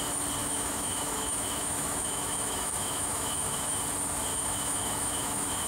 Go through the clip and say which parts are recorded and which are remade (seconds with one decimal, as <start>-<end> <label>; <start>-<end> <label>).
0.0-0.4 recorded; 0.4-3.8 remade; 3.8-4.3 recorded; 4.3-5.7 remade